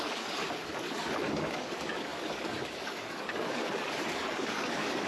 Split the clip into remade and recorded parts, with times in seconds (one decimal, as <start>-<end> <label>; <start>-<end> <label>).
0.0-5.1 remade